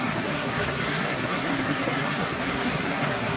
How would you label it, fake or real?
fake